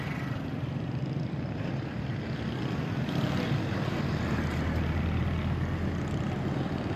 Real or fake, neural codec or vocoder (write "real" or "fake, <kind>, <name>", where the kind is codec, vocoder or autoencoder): real